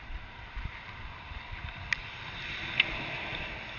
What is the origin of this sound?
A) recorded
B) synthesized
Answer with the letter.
A